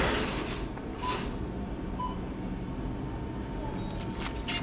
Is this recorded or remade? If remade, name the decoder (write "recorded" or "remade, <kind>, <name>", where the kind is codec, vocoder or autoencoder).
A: recorded